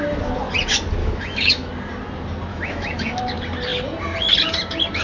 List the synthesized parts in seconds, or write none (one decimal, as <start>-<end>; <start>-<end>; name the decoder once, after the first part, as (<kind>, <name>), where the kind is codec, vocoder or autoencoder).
1.0-1.7 (autoencoder, DAC-VAE); 2.5-3.2